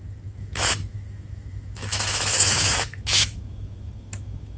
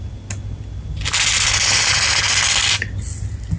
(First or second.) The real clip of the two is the second